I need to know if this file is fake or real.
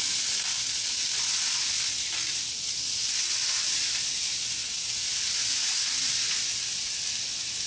real